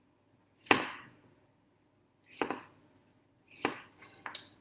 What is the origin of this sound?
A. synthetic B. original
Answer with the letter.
B